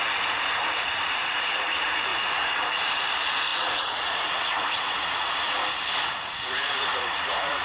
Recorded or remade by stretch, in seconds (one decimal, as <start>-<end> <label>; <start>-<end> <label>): 0.0-5.6 remade; 5.6-6.1 recorded; 6.1-7.6 remade